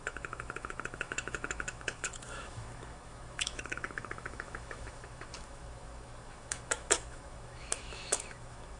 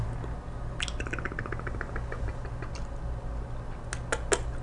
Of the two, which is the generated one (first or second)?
first